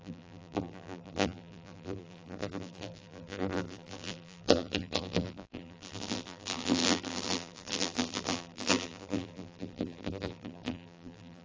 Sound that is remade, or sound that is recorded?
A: remade